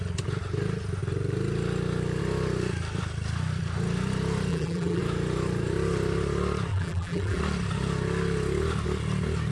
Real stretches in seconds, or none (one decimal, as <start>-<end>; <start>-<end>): 0.0-4.5; 5.0-6.7; 7.4-9.5